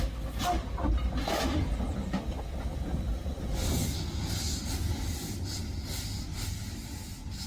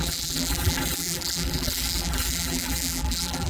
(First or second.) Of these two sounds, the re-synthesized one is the second